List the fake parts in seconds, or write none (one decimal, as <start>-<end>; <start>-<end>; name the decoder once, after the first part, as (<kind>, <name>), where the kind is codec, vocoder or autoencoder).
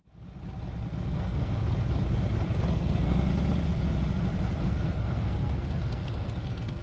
1.1-1.6 (codec, SNAC); 2.7-3.3; 4.6-6.8